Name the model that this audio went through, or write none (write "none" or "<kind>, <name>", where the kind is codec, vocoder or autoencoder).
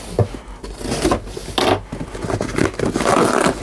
none